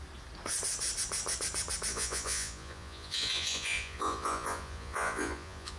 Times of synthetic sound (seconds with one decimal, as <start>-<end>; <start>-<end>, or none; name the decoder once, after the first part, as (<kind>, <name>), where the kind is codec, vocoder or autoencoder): 1.9-5.8 (vocoder, Vocos)